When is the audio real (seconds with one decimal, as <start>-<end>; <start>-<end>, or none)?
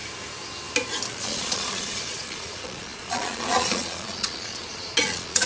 0.0-1.1